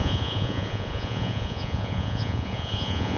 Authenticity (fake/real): fake